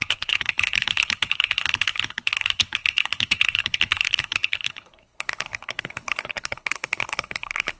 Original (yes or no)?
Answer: no